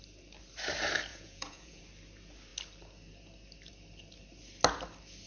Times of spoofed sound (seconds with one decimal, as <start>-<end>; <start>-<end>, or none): 1.1-1.8